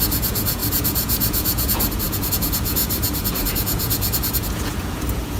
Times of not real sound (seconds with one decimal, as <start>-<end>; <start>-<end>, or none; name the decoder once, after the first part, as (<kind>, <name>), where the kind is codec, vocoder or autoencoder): 0.0-5.4 (vocoder, Vocos)